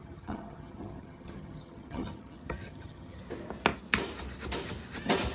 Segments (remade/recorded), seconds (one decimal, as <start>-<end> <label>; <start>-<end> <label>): 0.0-3.2 remade; 3.2-5.3 recorded